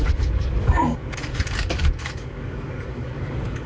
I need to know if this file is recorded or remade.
remade